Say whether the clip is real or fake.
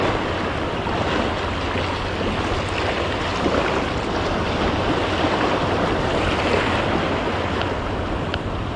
real